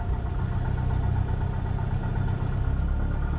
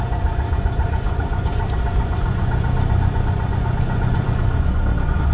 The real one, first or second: first